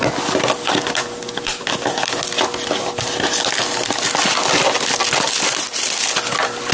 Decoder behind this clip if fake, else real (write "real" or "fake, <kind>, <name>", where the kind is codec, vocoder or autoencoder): real